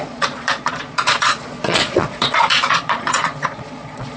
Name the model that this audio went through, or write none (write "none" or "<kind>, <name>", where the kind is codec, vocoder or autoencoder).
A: vocoder, Vocos